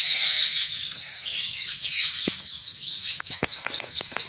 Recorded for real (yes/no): no